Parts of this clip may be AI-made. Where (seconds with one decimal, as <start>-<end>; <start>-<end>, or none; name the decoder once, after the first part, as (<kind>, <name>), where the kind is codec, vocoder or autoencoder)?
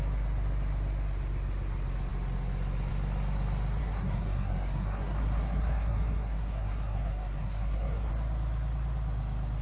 3.8-8.1 (codec, SNAC)